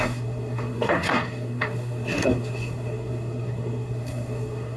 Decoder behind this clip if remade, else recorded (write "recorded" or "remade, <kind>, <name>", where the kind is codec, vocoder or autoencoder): remade, codec, SNAC